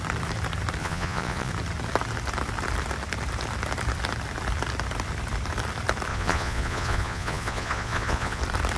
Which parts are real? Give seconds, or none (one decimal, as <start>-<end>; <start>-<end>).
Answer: 0.0-0.8; 1.5-6.1; 8.4-8.8